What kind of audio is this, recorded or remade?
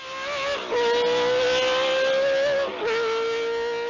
recorded